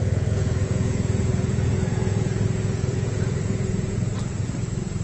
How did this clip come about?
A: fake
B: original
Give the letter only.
A